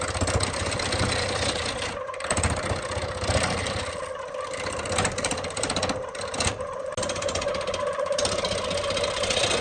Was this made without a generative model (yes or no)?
yes